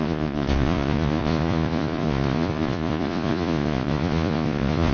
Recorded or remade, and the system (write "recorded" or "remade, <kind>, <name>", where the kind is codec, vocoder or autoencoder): remade, vocoder, Vocos